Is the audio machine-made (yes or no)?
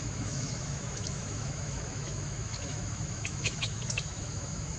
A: yes